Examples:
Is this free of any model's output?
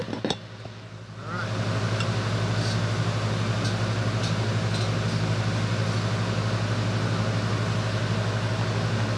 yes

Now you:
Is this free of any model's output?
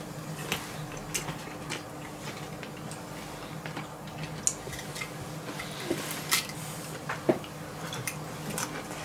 yes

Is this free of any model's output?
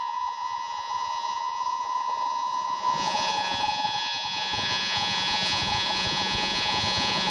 no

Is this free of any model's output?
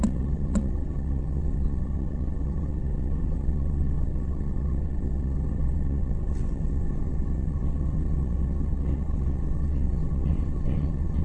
no